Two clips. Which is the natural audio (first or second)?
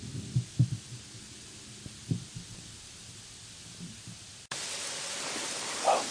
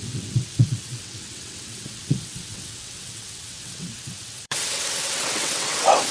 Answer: first